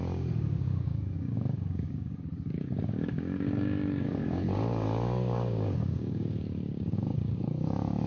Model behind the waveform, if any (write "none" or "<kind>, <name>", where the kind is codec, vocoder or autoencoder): codec, DAC